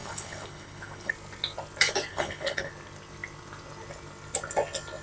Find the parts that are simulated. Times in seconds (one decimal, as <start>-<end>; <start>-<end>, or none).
0.0-1.1; 2.1-2.7